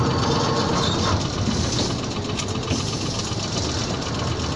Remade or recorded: recorded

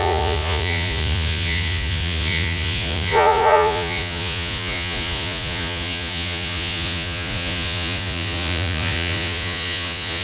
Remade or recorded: remade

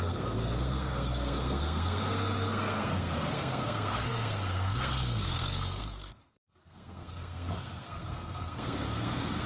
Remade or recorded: remade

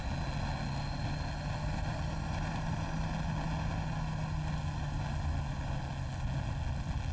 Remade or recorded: recorded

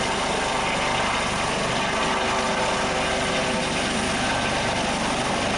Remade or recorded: recorded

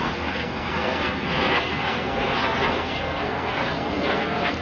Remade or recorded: remade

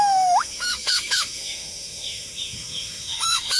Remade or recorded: remade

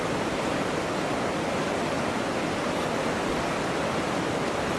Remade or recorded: recorded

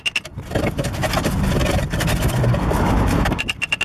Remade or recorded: recorded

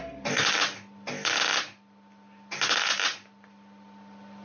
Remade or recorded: recorded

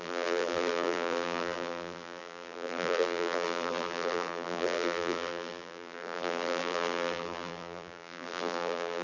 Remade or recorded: remade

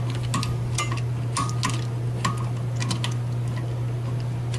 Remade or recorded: recorded